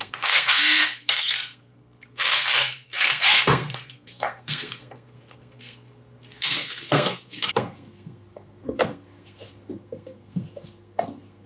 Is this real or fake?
fake